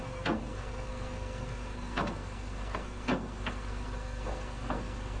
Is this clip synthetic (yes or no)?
yes